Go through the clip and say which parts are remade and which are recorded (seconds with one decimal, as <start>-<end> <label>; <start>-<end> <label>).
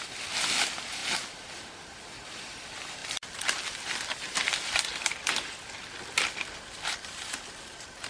0.0-8.1 recorded